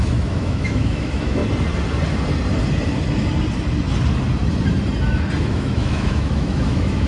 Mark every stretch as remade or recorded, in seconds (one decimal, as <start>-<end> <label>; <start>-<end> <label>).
0.0-1.4 remade; 1.4-5.4 recorded; 5.4-7.1 remade